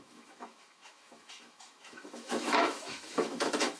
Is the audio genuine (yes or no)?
no